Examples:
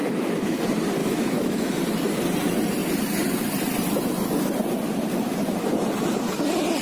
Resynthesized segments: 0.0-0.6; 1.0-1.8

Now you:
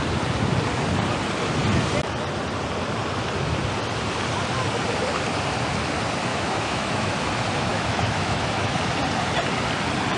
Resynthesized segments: 6.3-7.1; 7.7-8.8

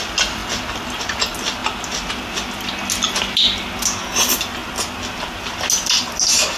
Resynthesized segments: none